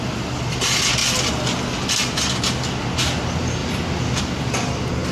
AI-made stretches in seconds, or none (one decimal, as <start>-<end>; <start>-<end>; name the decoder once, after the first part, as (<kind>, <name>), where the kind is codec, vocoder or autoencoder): none